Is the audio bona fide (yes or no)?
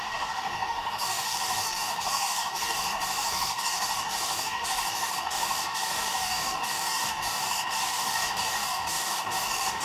no